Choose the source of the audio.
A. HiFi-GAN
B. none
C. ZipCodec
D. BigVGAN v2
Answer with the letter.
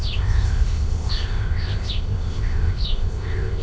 C